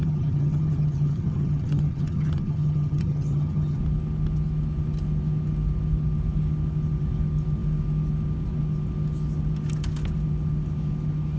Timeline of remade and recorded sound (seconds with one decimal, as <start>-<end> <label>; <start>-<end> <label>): 0.0-3.8 remade; 3.8-11.4 recorded